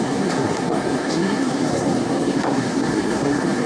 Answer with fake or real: fake